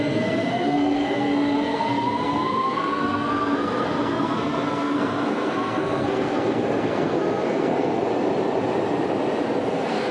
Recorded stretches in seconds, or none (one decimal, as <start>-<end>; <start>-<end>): 8.0-9.6